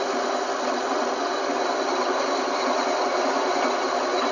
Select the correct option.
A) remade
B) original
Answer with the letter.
B